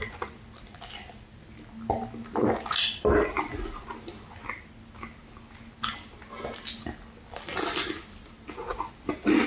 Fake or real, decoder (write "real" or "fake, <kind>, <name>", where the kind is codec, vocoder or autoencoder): real